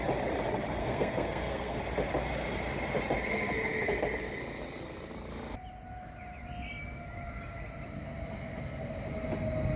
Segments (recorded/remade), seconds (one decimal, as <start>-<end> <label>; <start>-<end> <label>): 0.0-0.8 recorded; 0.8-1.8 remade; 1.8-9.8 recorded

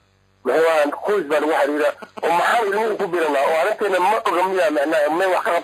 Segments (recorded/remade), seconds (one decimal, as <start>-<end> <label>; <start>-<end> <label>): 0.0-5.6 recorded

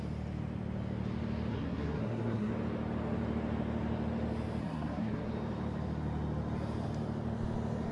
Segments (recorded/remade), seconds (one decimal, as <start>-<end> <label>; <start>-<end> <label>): 0.0-1.5 recorded; 1.5-2.5 remade; 2.5-4.6 recorded; 4.6-5.3 remade; 5.3-7.9 recorded

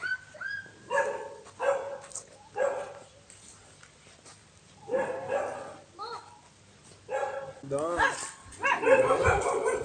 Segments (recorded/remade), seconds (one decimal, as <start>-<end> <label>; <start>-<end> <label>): 0.0-9.8 recorded